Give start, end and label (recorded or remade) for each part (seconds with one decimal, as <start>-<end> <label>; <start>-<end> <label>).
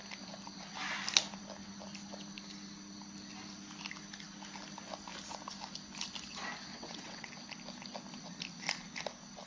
0.0-6.7 recorded; 6.7-7.3 remade; 7.3-9.5 recorded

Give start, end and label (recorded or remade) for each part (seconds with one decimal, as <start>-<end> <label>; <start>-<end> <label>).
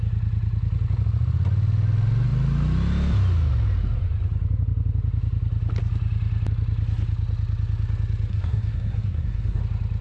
0.0-8.3 recorded; 8.3-9.6 remade; 9.6-10.0 recorded